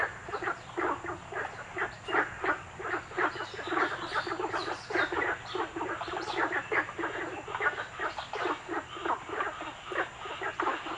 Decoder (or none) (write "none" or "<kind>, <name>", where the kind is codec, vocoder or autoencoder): none